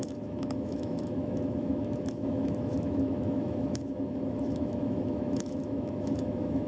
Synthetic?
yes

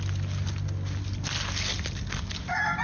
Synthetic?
no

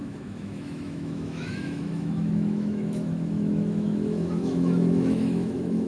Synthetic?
yes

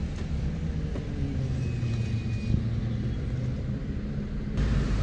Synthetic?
no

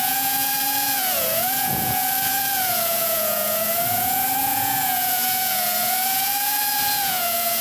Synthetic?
yes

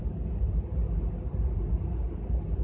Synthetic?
no